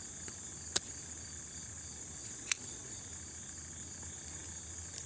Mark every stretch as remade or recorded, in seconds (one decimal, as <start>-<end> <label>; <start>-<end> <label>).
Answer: 0.0-2.2 recorded; 2.2-3.0 remade; 3.0-5.1 recorded